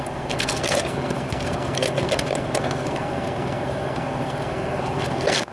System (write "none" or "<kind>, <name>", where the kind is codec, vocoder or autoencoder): codec, SNAC